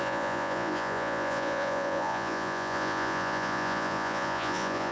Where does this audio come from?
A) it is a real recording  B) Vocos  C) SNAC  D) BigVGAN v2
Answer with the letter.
B